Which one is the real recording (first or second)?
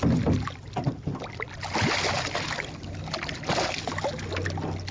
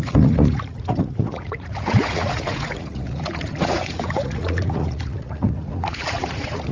first